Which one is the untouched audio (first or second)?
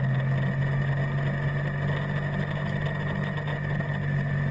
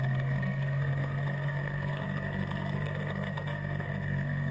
first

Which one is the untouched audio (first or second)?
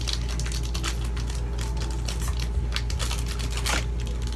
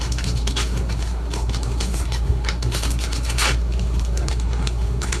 first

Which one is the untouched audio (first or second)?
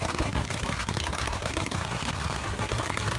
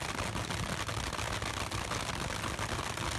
second